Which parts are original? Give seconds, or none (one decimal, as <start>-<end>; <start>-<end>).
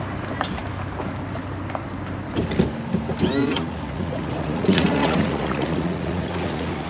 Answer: 0.0-3.4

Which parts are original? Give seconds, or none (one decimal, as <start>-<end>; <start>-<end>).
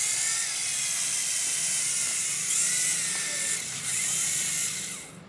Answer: 0.0-5.3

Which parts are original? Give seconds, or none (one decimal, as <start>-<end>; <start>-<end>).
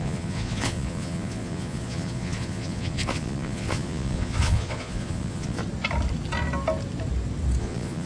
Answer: 5.6-7.6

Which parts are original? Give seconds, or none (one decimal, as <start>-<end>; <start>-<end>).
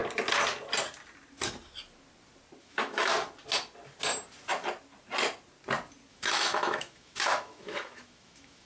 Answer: 0.0-2.6; 3.1-6.1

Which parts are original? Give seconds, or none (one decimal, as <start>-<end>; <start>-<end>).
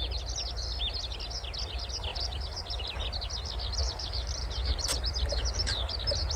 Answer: 0.0-2.1; 3.0-3.8; 5.9-6.4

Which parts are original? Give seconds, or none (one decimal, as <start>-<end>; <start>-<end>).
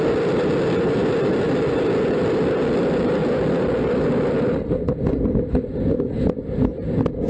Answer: 0.0-7.3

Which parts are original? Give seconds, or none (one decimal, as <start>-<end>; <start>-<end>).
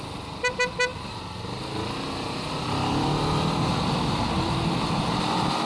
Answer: 0.0-5.7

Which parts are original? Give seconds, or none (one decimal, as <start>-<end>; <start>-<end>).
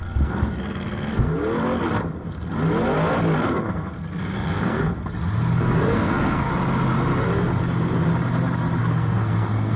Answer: 1.3-3.4; 4.9-5.6; 6.5-8.8